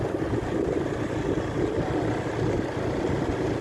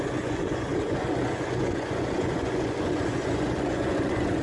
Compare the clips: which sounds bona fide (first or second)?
first